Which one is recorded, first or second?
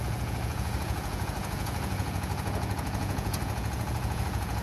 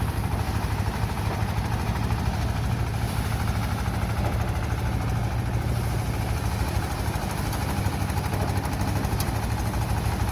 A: second